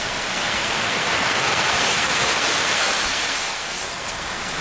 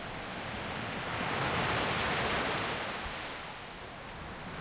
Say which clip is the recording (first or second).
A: second